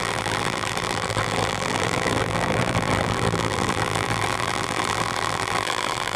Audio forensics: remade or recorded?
remade